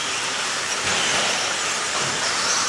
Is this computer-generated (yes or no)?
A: no